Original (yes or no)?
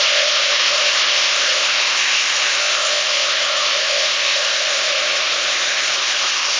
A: no